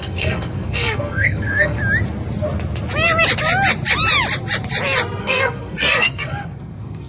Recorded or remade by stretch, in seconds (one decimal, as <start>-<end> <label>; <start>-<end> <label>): 0.0-1.8 remade; 1.8-5.2 recorded; 5.2-7.1 remade